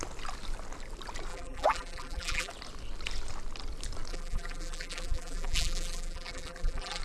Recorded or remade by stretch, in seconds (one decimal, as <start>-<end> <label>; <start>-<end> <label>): 0.0-1.3 recorded; 1.3-2.5 remade; 2.5-4.1 recorded; 4.1-7.0 remade